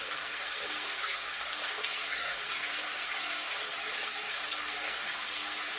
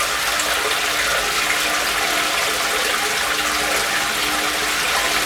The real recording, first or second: second